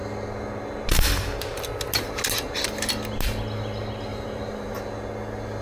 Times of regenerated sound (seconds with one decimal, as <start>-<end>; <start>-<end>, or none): 4.1-4.8